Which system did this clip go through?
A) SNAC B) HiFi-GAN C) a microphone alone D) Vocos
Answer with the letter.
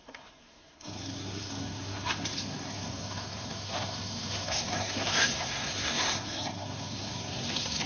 A